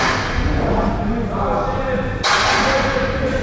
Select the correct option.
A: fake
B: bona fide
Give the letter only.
B